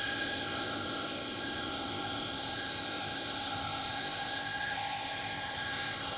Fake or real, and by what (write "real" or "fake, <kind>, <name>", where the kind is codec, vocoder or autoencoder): fake, codec, ZipCodec